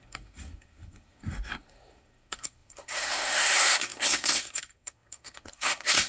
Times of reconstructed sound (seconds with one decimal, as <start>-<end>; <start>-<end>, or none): 0.0-6.1